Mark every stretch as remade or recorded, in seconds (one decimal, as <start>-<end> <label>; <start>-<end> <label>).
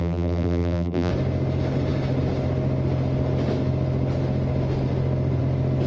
0.0-1.1 remade; 1.1-5.9 recorded